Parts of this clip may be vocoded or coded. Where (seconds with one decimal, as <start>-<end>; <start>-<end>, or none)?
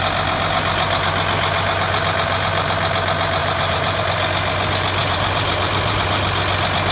3.4-4.0; 5.0-6.2